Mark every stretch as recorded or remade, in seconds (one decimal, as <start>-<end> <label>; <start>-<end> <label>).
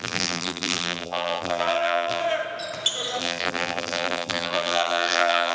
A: 0.0-2.2 remade; 2.2-3.2 recorded; 3.2-5.5 remade